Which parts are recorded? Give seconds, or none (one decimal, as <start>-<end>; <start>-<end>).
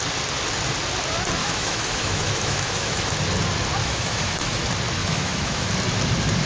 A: 0.0-1.4; 3.1-3.8; 4.6-5.0; 5.7-6.5